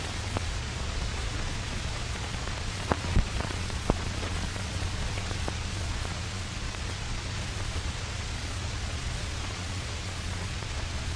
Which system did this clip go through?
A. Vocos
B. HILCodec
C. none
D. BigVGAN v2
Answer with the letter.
A